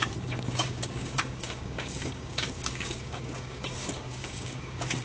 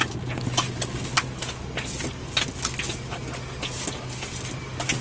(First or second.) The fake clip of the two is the first